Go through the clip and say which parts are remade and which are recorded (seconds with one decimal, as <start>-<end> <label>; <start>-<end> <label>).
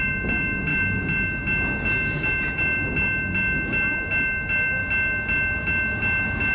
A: 0.0-6.5 recorded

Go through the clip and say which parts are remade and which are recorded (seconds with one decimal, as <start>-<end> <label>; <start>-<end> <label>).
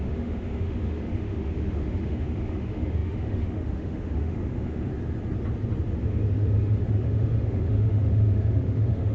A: 0.0-4.9 remade; 4.9-6.0 recorded; 6.0-9.1 remade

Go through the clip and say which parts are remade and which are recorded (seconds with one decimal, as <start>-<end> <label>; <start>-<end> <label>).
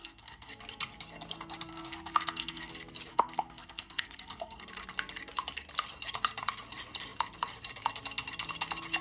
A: 0.0-0.5 remade; 0.5-1.7 recorded; 1.7-2.7 remade; 2.7-3.1 recorded; 3.1-4.6 remade; 4.6-9.0 recorded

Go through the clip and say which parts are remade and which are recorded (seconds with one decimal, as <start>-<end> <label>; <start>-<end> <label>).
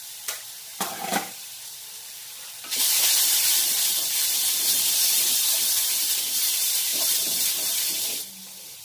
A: 0.0-6.9 remade; 6.9-8.8 recorded